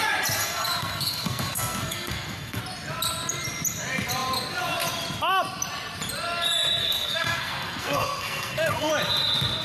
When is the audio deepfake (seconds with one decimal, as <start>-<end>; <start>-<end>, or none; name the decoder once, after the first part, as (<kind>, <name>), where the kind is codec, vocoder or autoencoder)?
0.4-2.6 (codec, SNAC); 6.8-8.9